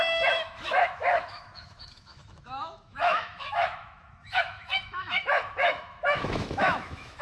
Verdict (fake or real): fake